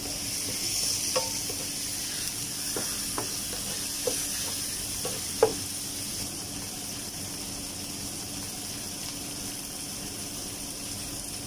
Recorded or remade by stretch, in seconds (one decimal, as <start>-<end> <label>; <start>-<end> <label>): 0.0-11.5 recorded